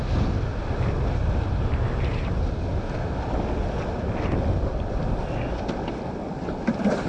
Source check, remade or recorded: recorded